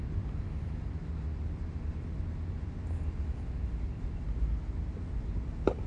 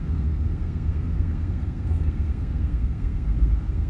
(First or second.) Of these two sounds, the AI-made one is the second